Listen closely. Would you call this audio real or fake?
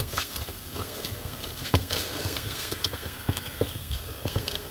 fake